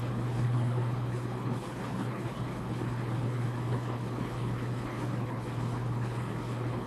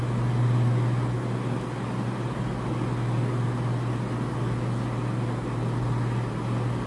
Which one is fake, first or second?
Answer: first